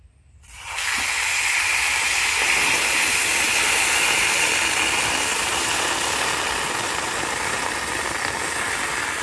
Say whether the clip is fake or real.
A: real